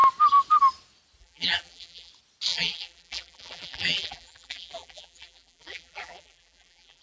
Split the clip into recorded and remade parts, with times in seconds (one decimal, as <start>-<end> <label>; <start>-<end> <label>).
0.0-1.2 recorded; 1.2-2.1 remade; 2.1-2.5 recorded; 2.5-7.0 remade